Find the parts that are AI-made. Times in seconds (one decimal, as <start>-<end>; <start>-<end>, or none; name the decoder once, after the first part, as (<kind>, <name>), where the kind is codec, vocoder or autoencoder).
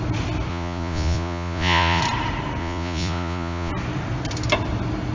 0.5-2.0 (vocoder, Vocos); 2.6-3.7